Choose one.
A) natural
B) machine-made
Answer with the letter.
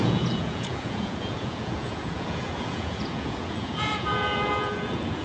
B